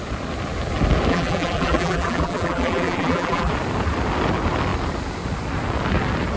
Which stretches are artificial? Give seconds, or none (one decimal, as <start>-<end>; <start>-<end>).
1.1-3.5